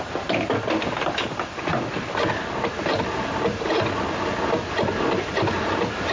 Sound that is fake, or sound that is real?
real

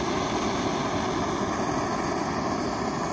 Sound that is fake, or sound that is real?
real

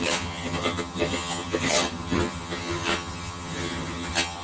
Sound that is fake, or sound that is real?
fake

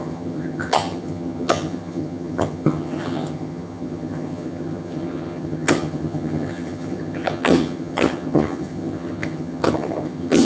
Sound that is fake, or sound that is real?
fake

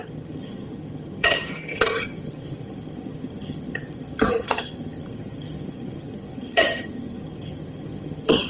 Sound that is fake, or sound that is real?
fake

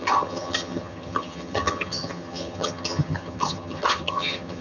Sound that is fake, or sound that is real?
fake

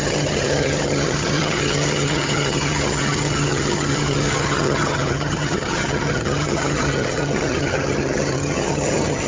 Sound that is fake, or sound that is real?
fake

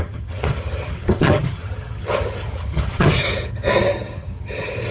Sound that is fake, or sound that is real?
fake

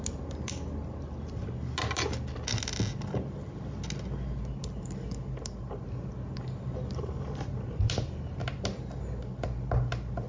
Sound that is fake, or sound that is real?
real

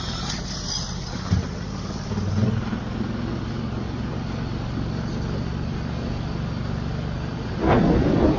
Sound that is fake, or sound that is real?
real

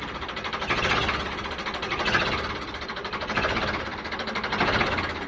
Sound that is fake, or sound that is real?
real